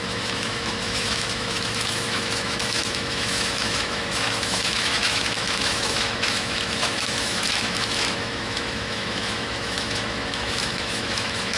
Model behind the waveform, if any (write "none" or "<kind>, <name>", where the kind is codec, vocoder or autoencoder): autoencoder, DAC-VAE